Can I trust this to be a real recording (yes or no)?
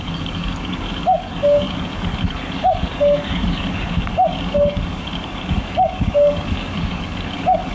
no